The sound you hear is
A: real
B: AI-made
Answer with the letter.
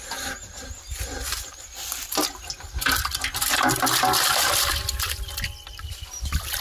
A